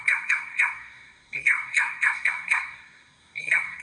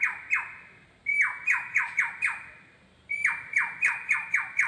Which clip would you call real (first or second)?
second